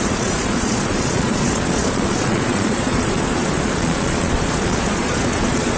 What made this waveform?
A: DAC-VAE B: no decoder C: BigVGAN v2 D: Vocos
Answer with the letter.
D